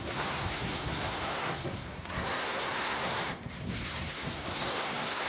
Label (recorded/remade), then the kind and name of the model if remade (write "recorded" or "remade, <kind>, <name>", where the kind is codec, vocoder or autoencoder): remade, codec, SNAC